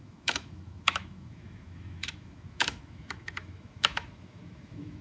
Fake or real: fake